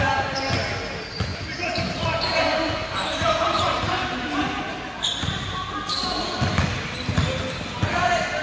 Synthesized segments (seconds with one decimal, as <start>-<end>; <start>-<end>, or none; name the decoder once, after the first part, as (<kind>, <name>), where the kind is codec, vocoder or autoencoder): 2.8-4.6 (vocoder, BigVGAN v2)